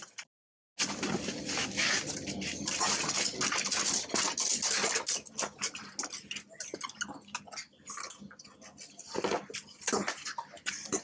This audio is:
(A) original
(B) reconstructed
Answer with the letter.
A